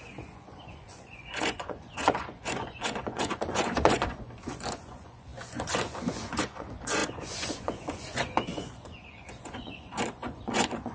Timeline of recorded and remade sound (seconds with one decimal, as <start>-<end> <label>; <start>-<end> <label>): 0.0-10.9 remade